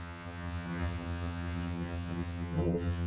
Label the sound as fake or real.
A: fake